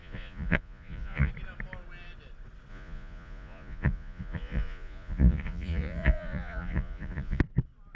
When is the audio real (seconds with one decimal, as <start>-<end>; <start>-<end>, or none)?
1.3-2.7; 7.4-8.0